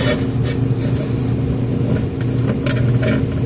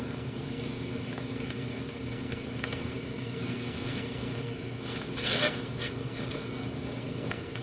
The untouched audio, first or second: first